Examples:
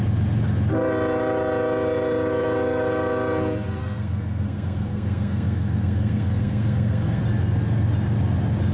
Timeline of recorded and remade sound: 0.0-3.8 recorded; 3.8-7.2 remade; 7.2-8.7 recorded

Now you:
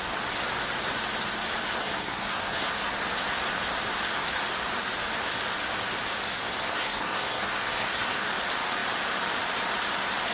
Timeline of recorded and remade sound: 0.0-1.8 recorded; 1.8-2.7 remade; 2.7-6.6 recorded; 6.6-8.3 remade; 8.3-10.3 recorded

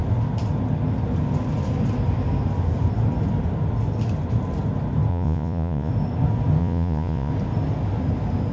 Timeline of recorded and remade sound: 0.0-5.1 recorded; 5.1-5.9 remade; 5.9-6.6 recorded; 6.6-7.3 remade; 7.3-8.5 recorded

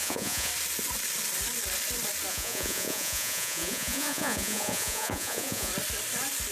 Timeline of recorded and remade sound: 0.0-0.5 remade; 0.5-2.3 recorded; 2.3-5.7 remade; 5.7-6.5 recorded

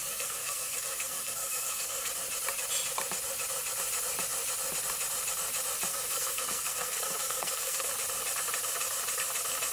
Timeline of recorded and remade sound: 0.0-2.1 remade; 2.1-5.9 recorded; 5.9-7.9 remade; 7.9-9.7 recorded

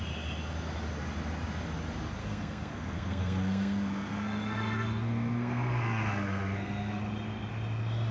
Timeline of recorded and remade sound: 0.0-2.2 recorded; 2.2-7.0 remade; 7.0-8.1 recorded

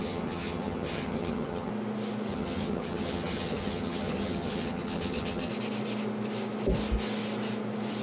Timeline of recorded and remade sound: 0.0-1.7 remade; 1.7-2.3 recorded; 2.3-5.5 remade; 5.5-8.0 recorded

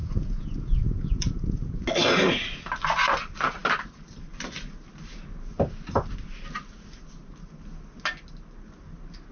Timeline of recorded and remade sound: 0.0-1.8 remade; 1.8-9.3 recorded